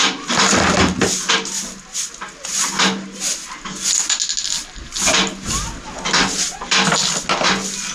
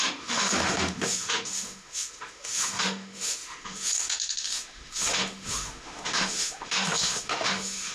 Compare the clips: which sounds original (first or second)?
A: first